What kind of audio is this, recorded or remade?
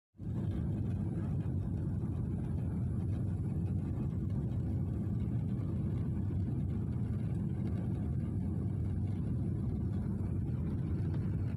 recorded